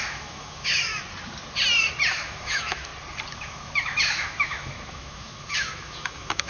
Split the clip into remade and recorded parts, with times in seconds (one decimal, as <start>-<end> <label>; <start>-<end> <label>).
0.0-0.9 remade; 0.9-2.1 recorded; 2.1-2.9 remade; 2.9-3.4 recorded; 3.4-6.5 remade